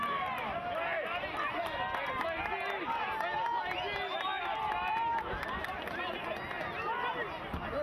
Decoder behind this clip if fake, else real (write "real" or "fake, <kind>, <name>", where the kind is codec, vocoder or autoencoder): real